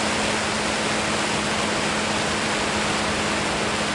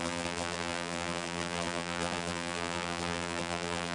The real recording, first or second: first